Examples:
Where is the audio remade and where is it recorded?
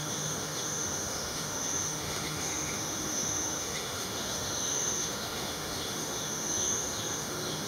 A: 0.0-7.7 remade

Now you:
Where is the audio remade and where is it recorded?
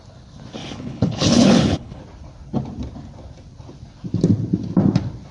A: 0.0-0.6 recorded; 0.6-2.0 remade; 2.0-5.3 recorded